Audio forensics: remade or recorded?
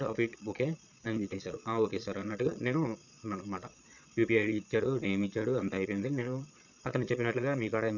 remade